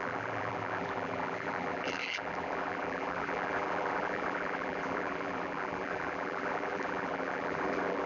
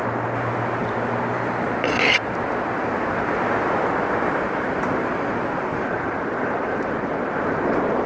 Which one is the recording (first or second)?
second